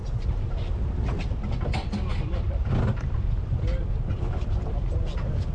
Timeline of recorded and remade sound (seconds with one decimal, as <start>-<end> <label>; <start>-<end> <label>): 0.0-5.5 recorded